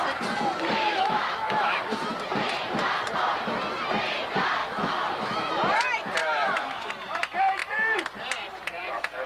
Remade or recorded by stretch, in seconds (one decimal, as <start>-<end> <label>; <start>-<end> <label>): 0.0-0.9 recorded; 0.9-2.1 remade; 2.1-4.6 recorded; 4.6-5.5 remade; 5.5-6.2 recorded; 6.2-6.9 remade; 6.9-9.3 recorded